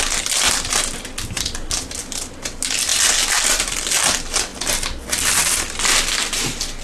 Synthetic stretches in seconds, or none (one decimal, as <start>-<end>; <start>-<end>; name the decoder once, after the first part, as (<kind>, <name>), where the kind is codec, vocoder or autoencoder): 2.9-3.8 (vocoder, BigVGAN v2)